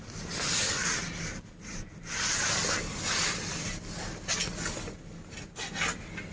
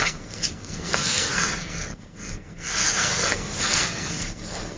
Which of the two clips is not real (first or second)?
second